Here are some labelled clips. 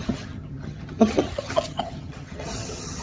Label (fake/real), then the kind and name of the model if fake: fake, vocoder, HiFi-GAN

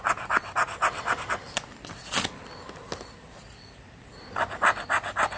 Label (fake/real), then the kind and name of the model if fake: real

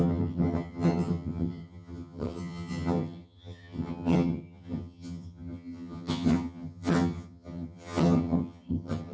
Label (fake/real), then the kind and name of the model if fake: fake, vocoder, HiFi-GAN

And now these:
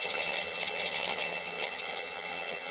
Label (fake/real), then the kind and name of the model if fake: fake, vocoder, HiFi-GAN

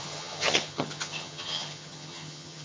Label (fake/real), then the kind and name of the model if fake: fake, vocoder, HiFi-GAN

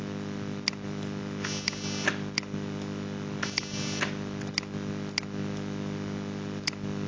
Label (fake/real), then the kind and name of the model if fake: real